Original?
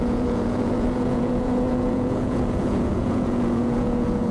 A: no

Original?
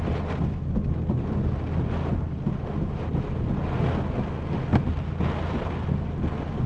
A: yes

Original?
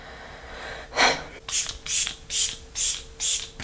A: yes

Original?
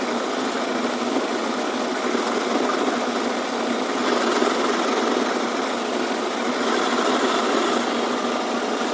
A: yes